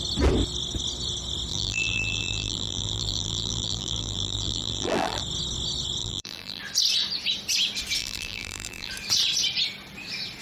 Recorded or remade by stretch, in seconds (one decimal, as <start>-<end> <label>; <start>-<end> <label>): 0.0-1.5 recorded; 1.5-5.2 remade; 5.2-6.0 recorded; 6.0-6.6 remade; 6.6-8.0 recorded; 8.0-8.9 remade; 8.9-10.4 recorded